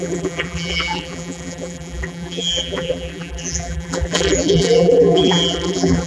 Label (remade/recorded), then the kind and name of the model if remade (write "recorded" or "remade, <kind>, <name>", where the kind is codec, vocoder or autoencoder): remade, vocoder, BigVGAN v2